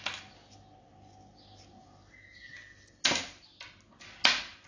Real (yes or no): yes